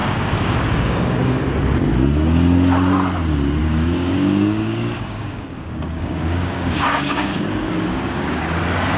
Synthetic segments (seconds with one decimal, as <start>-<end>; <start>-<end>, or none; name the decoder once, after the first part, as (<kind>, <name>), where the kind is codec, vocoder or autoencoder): 0.0-1.4 (codec, DAC); 3.6-8.6